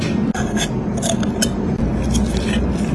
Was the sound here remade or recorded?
recorded